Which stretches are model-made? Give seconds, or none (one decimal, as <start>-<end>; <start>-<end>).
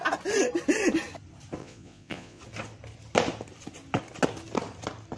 1.6-2.4